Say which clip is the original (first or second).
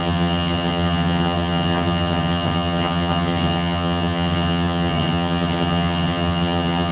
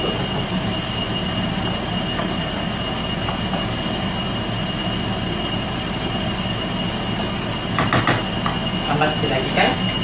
second